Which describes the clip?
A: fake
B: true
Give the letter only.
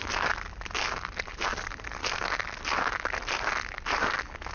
B